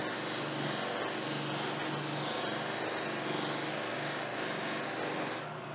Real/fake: real